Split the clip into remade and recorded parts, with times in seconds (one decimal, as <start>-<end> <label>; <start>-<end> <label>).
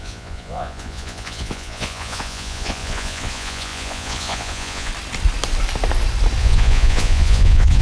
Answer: 0.0-4.9 remade; 4.9-6.4 recorded; 6.4-7.8 remade